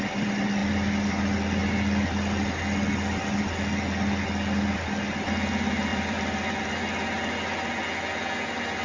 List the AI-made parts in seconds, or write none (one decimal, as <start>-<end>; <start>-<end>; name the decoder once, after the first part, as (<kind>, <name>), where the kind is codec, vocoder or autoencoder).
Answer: 5.9-6.6 (vocoder, BigVGAN v2)